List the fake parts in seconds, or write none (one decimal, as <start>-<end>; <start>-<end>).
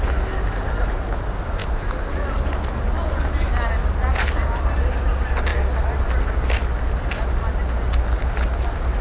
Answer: none